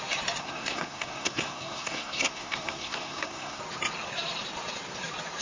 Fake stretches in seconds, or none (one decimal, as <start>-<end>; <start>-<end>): 0.4-3.6